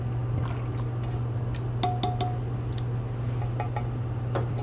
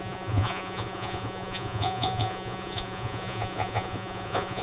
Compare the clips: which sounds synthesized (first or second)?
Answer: second